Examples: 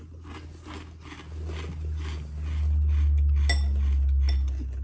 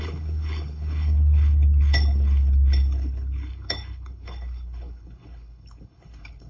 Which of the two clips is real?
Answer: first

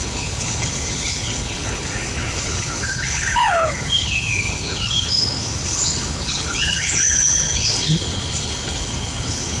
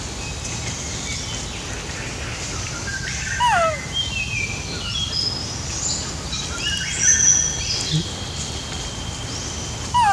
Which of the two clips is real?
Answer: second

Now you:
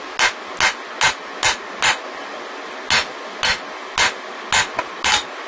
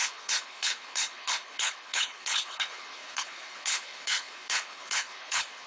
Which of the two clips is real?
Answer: first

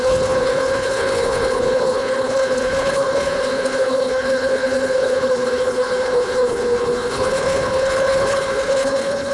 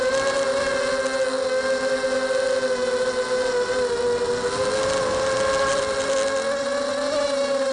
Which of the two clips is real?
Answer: second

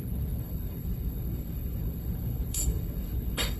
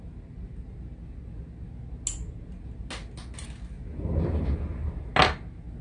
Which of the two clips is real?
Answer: second